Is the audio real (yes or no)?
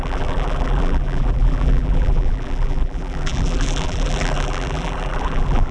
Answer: no